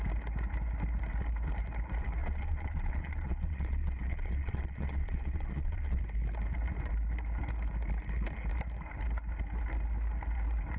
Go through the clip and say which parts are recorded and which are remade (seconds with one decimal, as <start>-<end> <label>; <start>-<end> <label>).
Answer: 0.0-2.2 recorded; 2.2-6.0 remade; 6.0-10.8 recorded